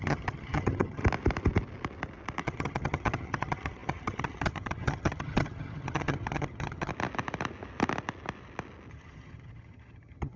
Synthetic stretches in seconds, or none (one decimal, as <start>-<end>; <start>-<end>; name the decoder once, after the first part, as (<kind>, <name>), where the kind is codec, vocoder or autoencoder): 0.0-1.0 (vocoder, HiFi-GAN); 2.4-6.9; 8.9-10.4